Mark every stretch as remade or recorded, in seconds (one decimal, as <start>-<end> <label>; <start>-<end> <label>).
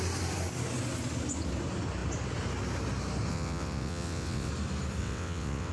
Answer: 0.0-3.3 recorded; 3.3-4.5 remade; 4.5-5.0 recorded; 5.0-5.7 remade